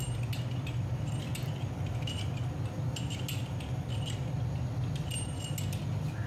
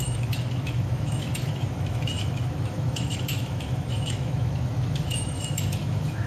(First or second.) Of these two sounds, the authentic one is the first